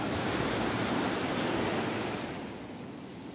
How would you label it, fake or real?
real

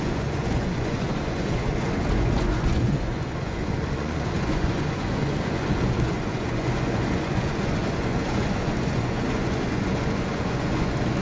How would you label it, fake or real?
fake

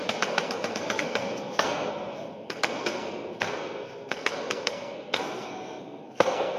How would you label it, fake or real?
fake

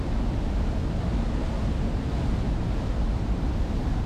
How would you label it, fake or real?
real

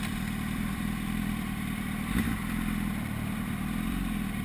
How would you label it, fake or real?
fake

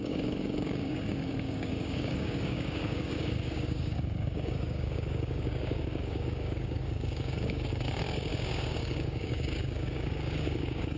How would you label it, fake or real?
fake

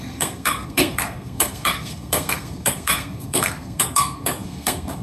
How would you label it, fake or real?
fake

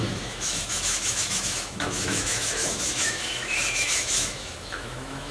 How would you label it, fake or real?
fake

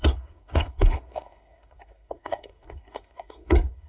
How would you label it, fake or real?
fake